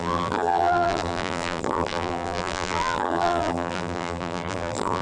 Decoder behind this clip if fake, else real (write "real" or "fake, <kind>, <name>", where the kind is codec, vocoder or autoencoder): fake, vocoder, BigVGAN v2